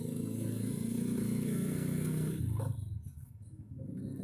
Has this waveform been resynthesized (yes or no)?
yes